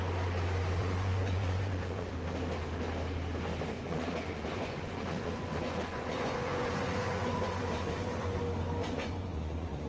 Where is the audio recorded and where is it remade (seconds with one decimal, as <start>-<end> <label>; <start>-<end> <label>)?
0.0-0.8 recorded; 0.8-2.1 remade; 2.1-3.7 recorded; 3.7-8.4 remade; 8.4-8.8 recorded; 8.8-9.9 remade